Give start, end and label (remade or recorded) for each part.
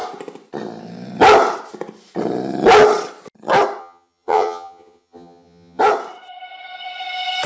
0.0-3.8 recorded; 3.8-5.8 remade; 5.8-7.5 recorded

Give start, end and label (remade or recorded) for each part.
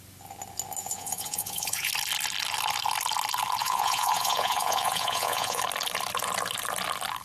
0.0-0.8 recorded; 0.8-1.9 remade; 1.9-3.6 recorded; 3.6-5.6 remade; 5.6-7.2 recorded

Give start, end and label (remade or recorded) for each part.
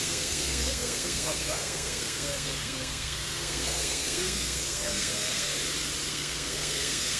0.0-5.5 remade; 5.5-6.1 recorded; 6.1-7.2 remade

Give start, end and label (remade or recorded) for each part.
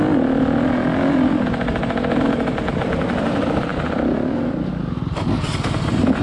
0.0-6.2 recorded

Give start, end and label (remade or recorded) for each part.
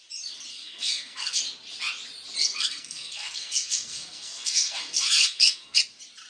0.0-0.5 recorded; 0.5-1.4 remade; 1.4-2.4 recorded; 2.4-5.8 remade; 5.8-6.3 recorded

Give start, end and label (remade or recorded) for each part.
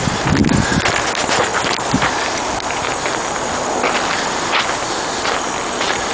0.0-6.1 recorded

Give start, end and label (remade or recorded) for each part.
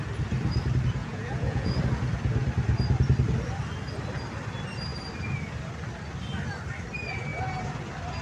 0.0-1.0 recorded; 1.0-1.8 remade; 1.8-8.2 recorded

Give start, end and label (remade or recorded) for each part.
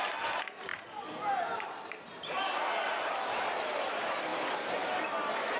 0.0-0.7 recorded; 0.7-2.4 remade; 2.4-4.3 recorded; 4.3-5.0 remade; 5.0-5.6 recorded